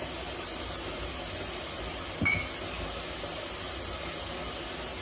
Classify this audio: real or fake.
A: real